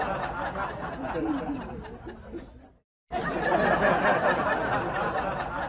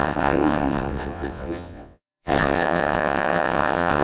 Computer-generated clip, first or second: second